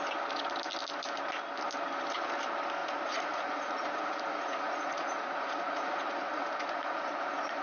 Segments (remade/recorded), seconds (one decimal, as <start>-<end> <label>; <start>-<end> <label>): 0.0-2.8 recorded; 2.8-7.6 remade